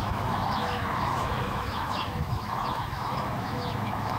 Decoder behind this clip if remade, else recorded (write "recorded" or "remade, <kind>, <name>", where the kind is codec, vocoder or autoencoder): remade, autoencoder, DAC-VAE